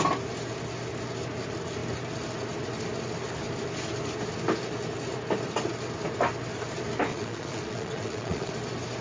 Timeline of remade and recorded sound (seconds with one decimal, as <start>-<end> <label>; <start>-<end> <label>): 0.0-7.1 recorded; 7.1-8.5 remade; 8.5-9.0 recorded